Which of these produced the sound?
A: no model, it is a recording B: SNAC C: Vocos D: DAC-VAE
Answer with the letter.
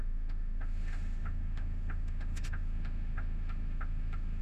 D